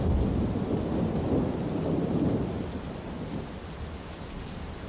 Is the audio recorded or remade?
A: recorded